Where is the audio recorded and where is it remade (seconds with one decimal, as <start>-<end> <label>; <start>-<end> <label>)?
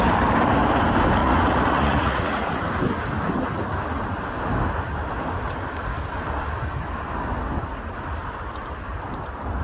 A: 0.0-1.2 recorded; 1.2-2.6 remade; 2.6-9.6 recorded